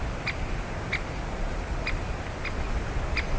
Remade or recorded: recorded